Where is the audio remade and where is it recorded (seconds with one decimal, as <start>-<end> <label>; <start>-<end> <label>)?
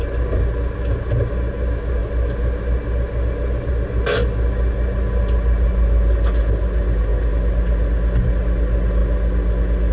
0.0-9.9 recorded